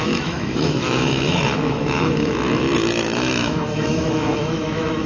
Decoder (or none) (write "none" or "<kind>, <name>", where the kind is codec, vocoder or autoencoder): autoencoder, DAC-VAE